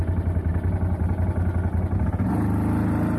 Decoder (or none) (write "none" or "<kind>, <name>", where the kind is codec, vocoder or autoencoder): none